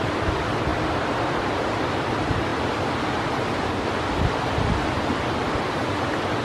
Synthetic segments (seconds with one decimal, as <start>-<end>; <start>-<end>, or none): none